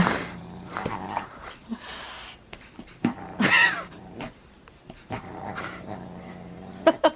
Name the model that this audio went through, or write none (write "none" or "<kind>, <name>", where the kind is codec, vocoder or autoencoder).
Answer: vocoder, BigVGAN v2